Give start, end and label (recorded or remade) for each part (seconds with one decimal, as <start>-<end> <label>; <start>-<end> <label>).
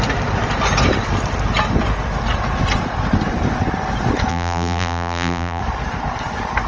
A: 0.0-4.3 recorded; 4.3-5.6 remade; 5.6-6.7 recorded